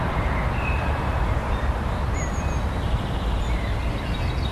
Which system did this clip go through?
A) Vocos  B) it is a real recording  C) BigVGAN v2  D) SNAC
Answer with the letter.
B